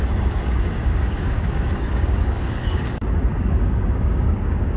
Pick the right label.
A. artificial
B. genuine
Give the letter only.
A